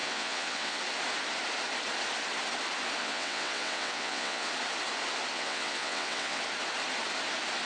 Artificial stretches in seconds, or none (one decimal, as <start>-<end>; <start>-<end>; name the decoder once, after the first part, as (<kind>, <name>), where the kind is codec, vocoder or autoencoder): 0.0-0.8 (vocoder, WaveNeXt); 3.0-4.5; 5.3-6.4